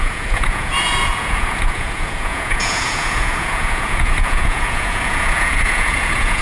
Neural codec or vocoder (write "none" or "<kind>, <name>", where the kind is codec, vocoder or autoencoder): vocoder, Vocos